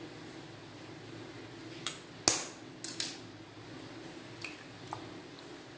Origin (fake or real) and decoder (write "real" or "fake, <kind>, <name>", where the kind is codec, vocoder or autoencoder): real